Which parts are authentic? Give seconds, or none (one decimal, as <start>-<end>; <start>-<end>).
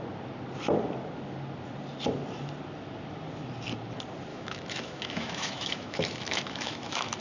0.0-4.3